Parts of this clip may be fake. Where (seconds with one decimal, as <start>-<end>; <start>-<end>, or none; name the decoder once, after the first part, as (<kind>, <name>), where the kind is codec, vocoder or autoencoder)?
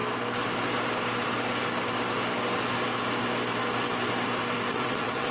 4.7-5.3 (vocoder, WaveNeXt)